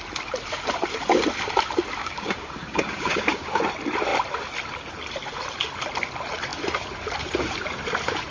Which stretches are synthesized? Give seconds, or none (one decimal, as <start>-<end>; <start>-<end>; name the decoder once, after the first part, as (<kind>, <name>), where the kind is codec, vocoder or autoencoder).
2.0-3.6 (codec, DAC)